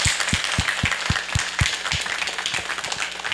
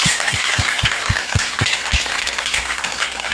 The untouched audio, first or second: first